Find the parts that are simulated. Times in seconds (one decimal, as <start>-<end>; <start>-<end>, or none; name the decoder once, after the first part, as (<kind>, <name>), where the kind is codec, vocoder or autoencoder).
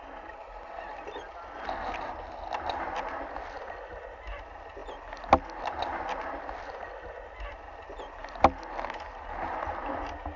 none